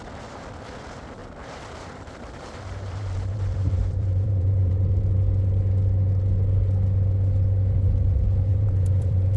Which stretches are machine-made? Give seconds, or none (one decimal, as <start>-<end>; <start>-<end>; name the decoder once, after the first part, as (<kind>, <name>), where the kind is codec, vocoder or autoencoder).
1.2-4.7 (vocoder, BigVGAN v2); 8.5-9.4